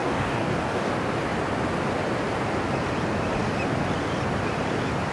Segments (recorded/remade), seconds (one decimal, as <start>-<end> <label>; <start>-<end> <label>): 0.0-0.9 remade; 0.9-5.1 recorded